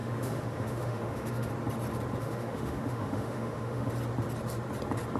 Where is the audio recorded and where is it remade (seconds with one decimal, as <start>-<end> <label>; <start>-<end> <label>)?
0.0-1.5 remade; 1.5-2.2 recorded; 2.2-3.9 remade; 3.9-5.2 recorded